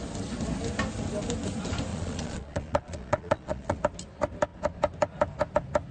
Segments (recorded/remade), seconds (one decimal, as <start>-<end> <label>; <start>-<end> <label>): 0.0-1.9 recorded; 1.9-3.8 remade; 3.8-5.9 recorded